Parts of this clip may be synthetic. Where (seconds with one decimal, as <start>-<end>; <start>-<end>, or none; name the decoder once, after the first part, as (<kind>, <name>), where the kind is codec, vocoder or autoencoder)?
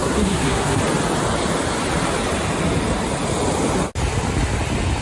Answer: 0.0-0.8 (codec, SNAC)